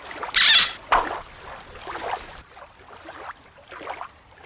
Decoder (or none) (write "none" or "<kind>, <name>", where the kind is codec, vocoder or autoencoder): none